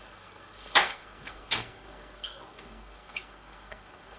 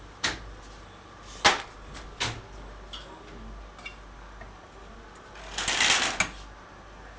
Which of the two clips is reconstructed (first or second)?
first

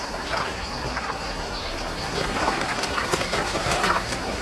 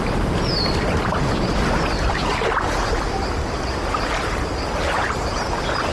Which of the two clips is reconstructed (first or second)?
first